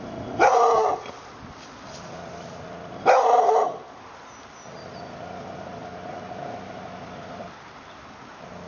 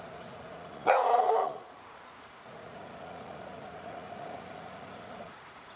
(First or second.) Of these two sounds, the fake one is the second